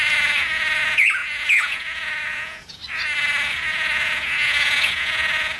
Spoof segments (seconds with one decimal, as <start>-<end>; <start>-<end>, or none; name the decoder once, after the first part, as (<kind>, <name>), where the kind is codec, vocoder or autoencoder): 0.0-2.8 (vocoder, Vocos); 3.5-5.6